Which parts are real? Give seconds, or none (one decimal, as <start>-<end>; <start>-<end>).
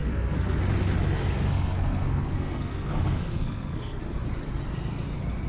0.6-1.2; 4.0-5.5